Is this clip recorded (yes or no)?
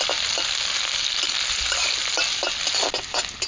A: yes